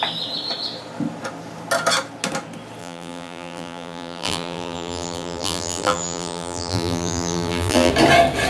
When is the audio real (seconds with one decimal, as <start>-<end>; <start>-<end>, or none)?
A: 0.0-2.8; 7.9-8.5